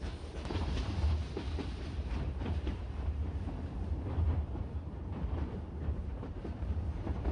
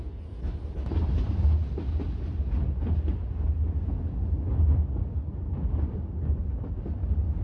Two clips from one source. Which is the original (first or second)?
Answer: second